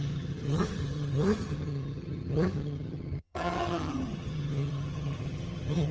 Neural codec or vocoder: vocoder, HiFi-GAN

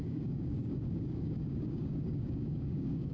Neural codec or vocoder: codec, DAC